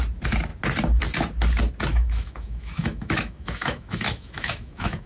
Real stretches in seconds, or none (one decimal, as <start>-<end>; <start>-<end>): 0.0-1.9